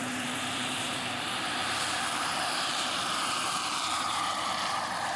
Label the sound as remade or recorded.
remade